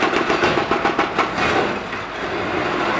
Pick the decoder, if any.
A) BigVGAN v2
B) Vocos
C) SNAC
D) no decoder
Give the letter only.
D